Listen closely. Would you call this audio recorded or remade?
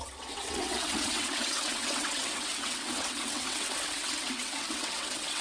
remade